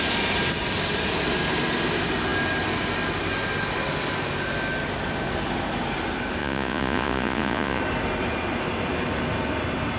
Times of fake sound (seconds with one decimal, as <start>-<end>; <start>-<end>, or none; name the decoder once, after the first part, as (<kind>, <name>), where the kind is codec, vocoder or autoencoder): 6.4-7.8 (vocoder, Vocos)